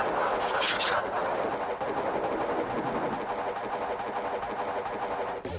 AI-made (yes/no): no